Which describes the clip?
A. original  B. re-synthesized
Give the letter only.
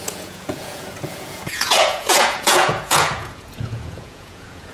B